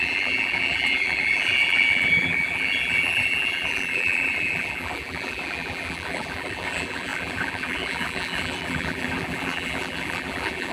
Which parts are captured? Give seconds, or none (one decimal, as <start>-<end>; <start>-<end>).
none